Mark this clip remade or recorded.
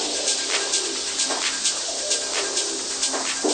recorded